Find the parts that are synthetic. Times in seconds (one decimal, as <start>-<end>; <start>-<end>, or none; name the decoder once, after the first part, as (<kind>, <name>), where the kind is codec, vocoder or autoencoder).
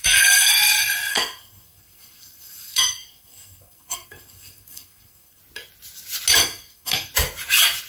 0.0-0.5 (codec, SNAC); 1.1-5.4; 6.4-7.1